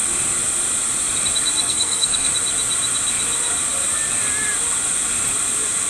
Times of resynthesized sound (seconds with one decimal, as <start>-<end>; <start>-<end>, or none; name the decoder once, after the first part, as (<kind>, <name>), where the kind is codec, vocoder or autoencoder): 1.6-2.3 (codec, SNAC)